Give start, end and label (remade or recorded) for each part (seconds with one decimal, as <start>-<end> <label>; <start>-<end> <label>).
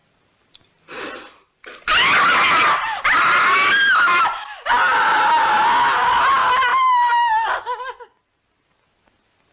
0.0-9.5 recorded